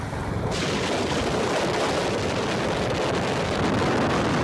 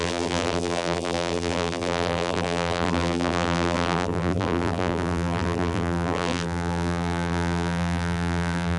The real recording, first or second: first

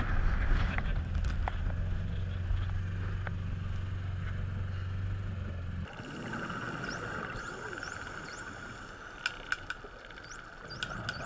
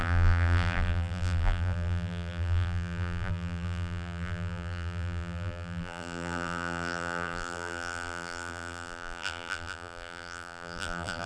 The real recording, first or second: first